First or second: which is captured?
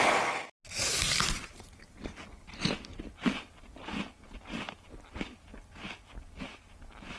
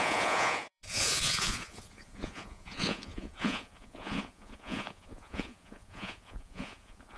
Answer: first